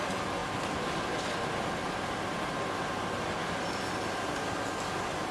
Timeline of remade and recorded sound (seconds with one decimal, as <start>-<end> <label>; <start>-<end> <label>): 0.0-5.3 recorded